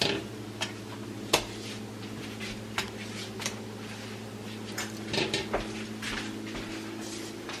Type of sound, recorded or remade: recorded